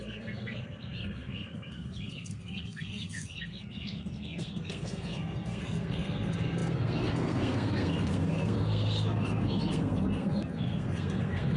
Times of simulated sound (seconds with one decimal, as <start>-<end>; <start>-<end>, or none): 0.0-11.6